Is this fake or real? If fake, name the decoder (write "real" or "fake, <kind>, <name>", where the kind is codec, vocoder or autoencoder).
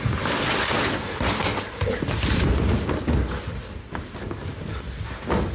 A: real